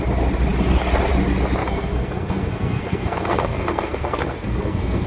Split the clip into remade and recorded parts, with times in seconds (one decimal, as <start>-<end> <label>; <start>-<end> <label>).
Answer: 0.0-1.6 recorded; 1.6-5.1 remade